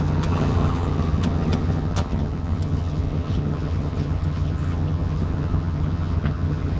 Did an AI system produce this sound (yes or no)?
yes